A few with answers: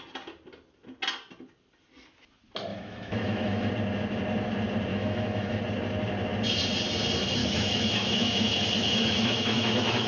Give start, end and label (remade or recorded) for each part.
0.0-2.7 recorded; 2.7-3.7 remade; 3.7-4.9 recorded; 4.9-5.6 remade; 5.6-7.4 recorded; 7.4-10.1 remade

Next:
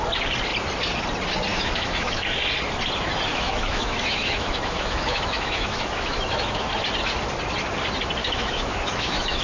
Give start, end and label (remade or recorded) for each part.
0.0-1.5 recorded; 1.5-2.4 remade; 2.4-3.3 recorded; 3.3-6.7 remade; 6.7-8.2 recorded; 8.2-9.4 remade

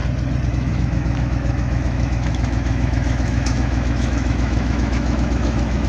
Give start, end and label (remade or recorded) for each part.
0.0-0.5 recorded; 0.5-5.9 remade

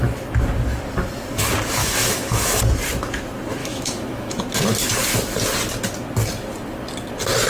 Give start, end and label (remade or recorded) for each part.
0.0-1.8 recorded; 1.8-2.6 remade; 2.6-3.6 recorded; 3.6-4.4 remade; 4.4-7.5 recorded